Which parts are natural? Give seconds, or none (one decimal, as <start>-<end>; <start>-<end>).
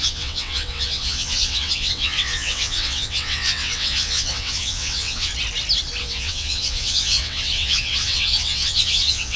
5.3-6.0